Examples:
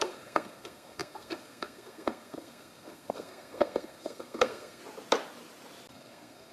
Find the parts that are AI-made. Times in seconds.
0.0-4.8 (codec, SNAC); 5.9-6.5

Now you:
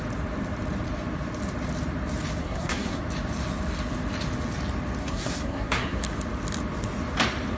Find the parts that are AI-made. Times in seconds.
2.4-3.0 (codec, SNAC); 5.0-6.0